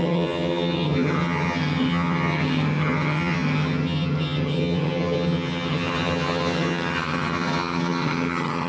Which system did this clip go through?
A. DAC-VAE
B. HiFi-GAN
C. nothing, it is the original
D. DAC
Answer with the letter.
B